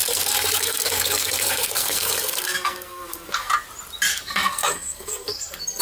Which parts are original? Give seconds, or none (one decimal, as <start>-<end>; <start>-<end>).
3.5-4.1